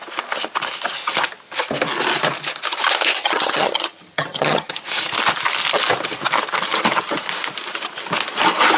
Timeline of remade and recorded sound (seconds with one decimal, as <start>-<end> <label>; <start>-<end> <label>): 0.0-3.2 recorded; 3.2-4.7 remade; 4.7-8.8 recorded